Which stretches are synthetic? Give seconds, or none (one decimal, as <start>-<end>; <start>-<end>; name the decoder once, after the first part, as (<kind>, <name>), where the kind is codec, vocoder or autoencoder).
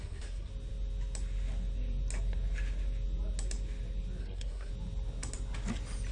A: 0.0-0.5 (codec, SNAC); 4.2-4.7